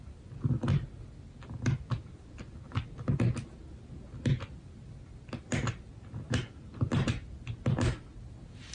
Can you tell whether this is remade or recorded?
recorded